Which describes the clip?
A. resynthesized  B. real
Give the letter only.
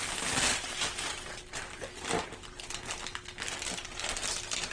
B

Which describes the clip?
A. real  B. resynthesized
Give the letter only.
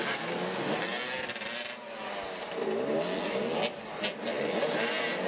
A